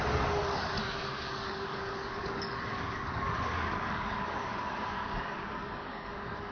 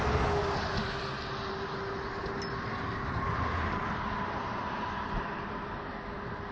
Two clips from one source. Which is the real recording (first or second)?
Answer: second